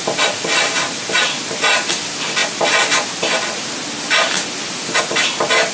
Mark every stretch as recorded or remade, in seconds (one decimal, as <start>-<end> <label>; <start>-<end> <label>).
0.0-5.7 recorded